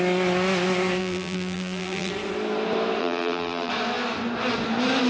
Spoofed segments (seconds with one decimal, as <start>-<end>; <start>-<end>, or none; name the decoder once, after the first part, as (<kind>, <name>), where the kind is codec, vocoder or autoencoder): 1.0-2.1 (vocoder, BigVGAN v2); 3.0-3.7